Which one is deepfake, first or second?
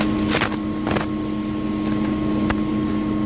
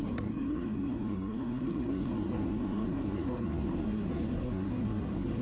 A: second